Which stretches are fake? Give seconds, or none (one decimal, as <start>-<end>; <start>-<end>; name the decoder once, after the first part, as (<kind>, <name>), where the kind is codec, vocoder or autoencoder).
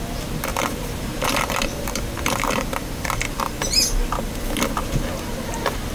0.5-3.4 (vocoder, BigVGAN v2)